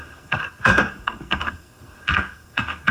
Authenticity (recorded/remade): remade